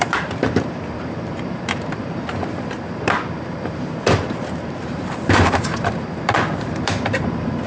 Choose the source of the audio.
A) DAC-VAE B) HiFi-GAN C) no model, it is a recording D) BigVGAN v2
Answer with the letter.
D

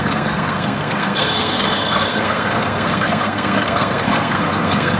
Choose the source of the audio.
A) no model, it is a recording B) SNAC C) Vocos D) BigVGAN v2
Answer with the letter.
B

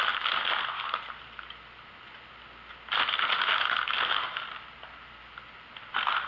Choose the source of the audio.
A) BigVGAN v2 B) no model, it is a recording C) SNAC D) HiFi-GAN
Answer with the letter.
B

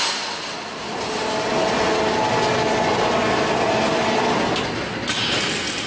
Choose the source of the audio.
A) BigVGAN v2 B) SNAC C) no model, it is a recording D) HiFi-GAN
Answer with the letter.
C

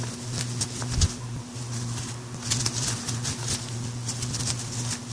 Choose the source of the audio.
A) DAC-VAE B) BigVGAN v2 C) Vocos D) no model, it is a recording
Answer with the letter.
D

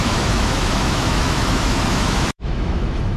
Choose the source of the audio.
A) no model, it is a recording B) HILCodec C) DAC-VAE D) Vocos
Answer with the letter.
C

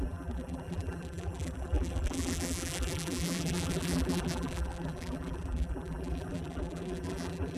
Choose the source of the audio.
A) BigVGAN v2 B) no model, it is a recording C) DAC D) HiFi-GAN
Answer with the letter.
A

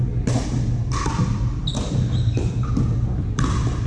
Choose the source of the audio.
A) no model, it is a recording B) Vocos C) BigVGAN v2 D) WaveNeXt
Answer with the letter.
A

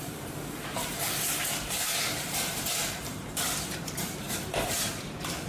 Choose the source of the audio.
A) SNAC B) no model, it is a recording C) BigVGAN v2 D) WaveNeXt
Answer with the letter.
C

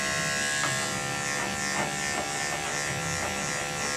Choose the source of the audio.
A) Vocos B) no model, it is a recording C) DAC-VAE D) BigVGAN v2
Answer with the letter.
B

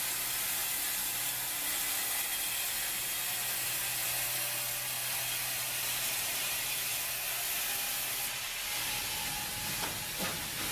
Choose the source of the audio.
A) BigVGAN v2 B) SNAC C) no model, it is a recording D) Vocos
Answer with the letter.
C